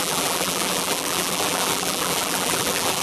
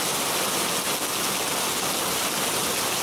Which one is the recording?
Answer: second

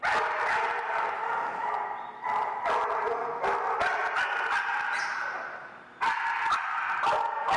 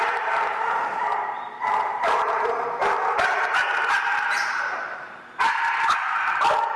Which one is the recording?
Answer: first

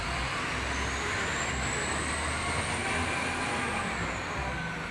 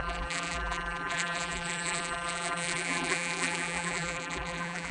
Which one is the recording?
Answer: first